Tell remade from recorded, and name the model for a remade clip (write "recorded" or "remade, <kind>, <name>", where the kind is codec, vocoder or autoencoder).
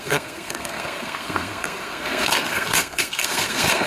remade, codec, SNAC